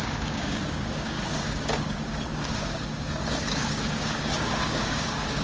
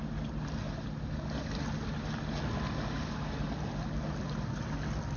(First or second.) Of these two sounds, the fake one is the first